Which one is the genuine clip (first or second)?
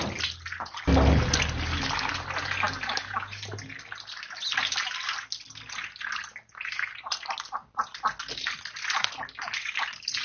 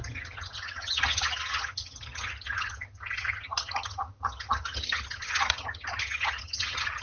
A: first